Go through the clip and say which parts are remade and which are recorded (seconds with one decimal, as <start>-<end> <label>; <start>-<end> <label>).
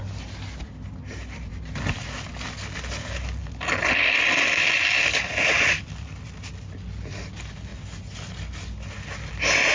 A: 0.0-1.2 recorded; 1.2-2.3 remade; 2.3-3.4 recorded; 3.4-6.3 remade; 6.3-9.7 recorded